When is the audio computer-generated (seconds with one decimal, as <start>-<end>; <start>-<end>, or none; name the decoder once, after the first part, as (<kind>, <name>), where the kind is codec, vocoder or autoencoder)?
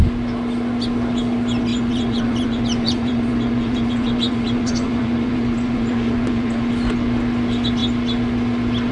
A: 1.7-6.7 (vocoder, Vocos)